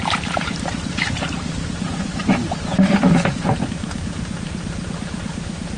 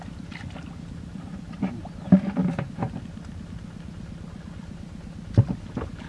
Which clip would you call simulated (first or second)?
first